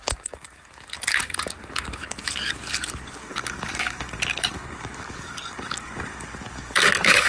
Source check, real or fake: fake